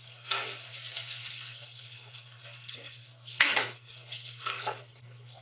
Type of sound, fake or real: fake